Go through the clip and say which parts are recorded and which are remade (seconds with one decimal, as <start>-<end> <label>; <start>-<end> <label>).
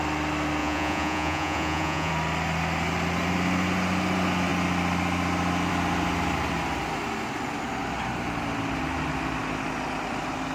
0.0-0.6 recorded; 0.6-2.1 remade; 2.1-10.5 recorded